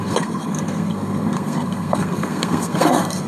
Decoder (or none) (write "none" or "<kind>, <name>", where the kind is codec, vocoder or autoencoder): codec, SNAC